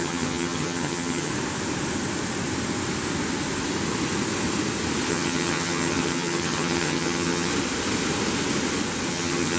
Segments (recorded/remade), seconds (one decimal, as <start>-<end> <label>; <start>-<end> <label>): 0.0-1.3 remade; 1.3-5.1 recorded; 5.1-7.5 remade; 7.5-9.1 recorded; 9.1-9.6 remade